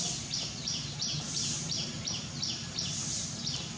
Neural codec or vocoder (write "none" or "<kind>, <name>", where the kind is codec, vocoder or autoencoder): none